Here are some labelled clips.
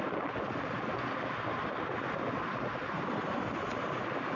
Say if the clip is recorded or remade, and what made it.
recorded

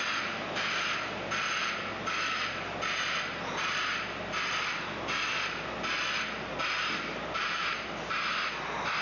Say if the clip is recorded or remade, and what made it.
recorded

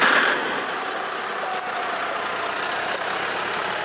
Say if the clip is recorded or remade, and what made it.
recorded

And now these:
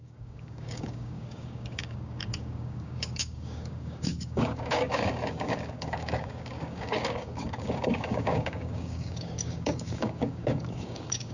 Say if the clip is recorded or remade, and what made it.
remade, codec, DAC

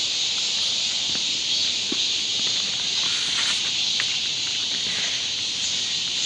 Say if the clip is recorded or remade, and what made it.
recorded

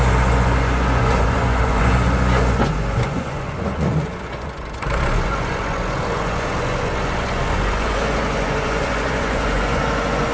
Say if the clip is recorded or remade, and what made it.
remade, vocoder, Vocos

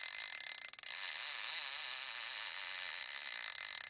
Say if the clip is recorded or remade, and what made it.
recorded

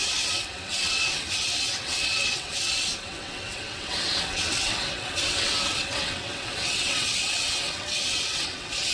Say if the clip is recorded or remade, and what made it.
remade, vocoder, WaveNeXt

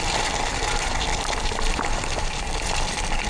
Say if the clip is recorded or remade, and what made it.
recorded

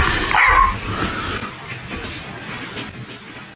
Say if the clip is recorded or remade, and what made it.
recorded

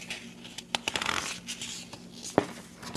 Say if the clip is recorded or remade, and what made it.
recorded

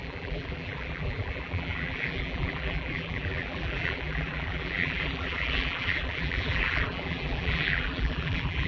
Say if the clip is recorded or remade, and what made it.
remade, vocoder, BigVGAN v2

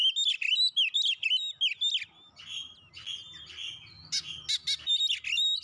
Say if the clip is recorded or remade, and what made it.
recorded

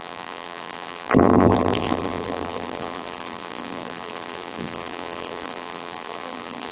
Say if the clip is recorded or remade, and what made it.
remade, vocoder, BigVGAN v2